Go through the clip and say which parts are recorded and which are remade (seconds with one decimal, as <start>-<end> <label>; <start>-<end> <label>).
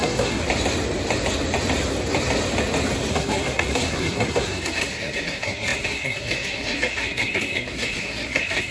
0.0-0.4 remade; 0.4-3.1 recorded; 3.1-8.7 remade